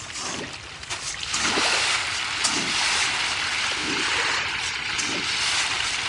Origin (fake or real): real